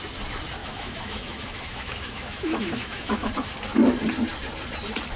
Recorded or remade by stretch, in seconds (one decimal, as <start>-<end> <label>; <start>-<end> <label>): 0.0-0.6 recorded; 0.6-3.3 remade; 3.3-5.2 recorded